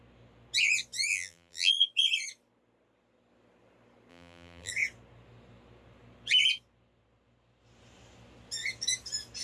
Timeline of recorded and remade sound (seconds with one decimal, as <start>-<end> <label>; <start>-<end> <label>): 0.0-1.1 recorded; 1.1-1.7 remade; 1.7-4.1 recorded; 4.1-4.7 remade; 4.7-9.4 recorded